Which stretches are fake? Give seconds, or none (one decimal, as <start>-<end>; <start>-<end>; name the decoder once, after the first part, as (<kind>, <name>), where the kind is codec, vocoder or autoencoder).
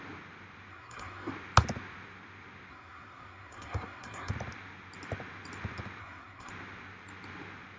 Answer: 0.7-1.3 (codec, SNAC); 2.7-4.3; 6.0-6.5